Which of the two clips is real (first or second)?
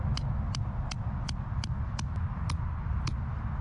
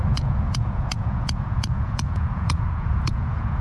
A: first